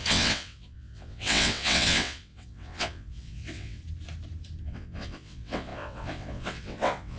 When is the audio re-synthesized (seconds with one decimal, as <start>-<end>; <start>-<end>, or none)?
0.0-3.8; 4.6-7.2